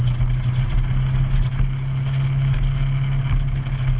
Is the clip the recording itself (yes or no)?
yes